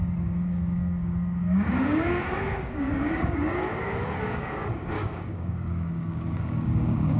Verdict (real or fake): fake